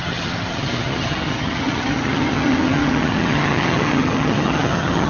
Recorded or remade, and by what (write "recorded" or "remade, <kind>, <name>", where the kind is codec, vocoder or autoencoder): remade, vocoder, HiFi-GAN